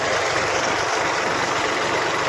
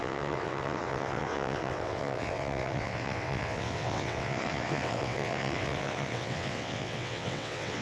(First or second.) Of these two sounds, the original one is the first